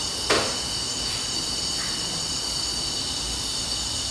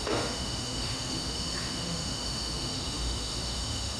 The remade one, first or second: second